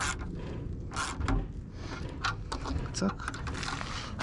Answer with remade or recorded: recorded